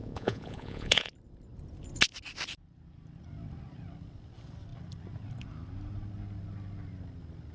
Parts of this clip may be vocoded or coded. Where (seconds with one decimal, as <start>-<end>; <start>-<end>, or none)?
0.0-1.1